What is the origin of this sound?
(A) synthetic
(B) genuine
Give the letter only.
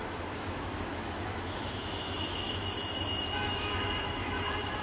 A